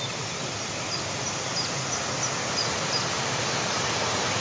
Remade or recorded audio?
recorded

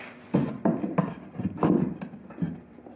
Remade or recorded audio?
remade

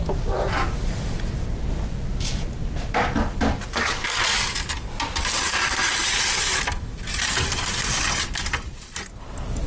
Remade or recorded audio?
recorded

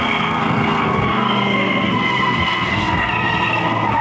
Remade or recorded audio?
remade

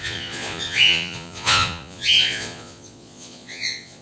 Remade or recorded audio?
remade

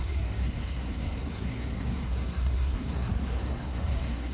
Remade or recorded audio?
remade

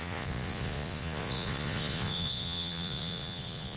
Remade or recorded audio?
remade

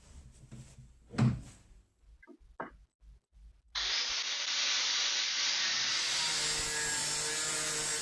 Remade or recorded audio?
recorded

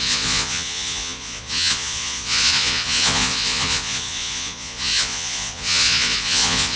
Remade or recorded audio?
remade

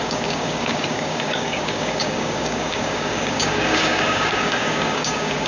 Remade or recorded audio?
remade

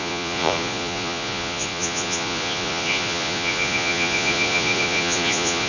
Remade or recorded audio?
remade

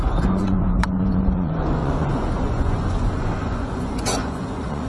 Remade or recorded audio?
remade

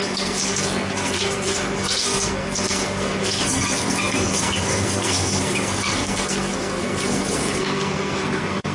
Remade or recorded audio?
remade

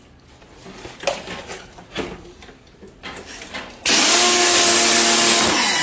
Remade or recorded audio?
recorded